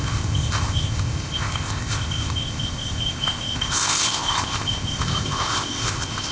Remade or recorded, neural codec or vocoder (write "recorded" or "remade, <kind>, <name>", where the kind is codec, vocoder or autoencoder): remade, codec, ZipCodec